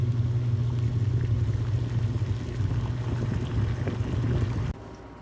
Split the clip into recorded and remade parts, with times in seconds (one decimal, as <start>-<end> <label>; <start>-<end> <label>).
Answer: 0.0-5.2 recorded